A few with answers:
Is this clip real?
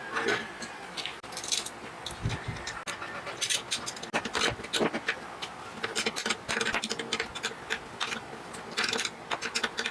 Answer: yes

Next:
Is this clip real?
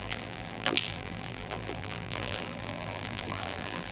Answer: no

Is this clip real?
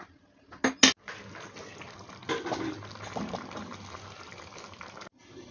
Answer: yes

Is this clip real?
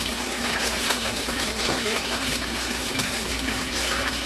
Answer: no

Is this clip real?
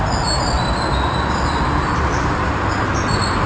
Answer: yes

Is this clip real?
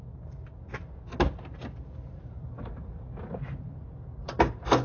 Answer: yes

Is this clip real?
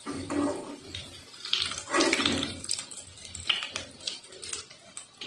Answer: yes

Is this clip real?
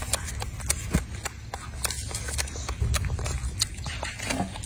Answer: yes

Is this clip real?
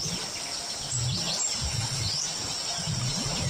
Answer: no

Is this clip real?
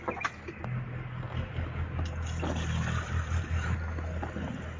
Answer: yes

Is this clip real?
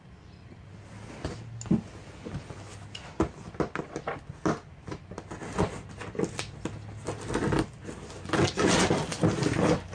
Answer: yes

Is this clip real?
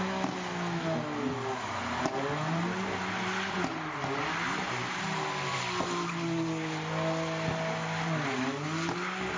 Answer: yes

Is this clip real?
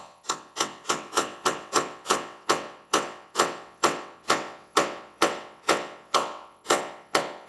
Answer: no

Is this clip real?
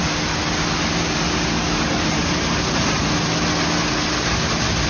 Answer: yes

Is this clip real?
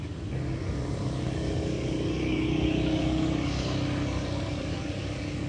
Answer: no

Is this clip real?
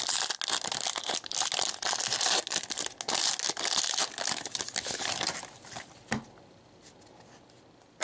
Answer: yes